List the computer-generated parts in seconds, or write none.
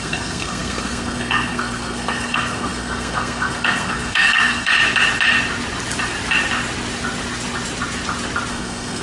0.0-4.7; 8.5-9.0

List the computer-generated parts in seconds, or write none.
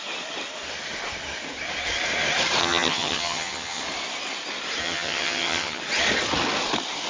2.6-3.8; 4.8-5.8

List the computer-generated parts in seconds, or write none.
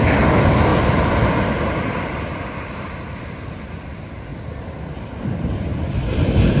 0.0-6.6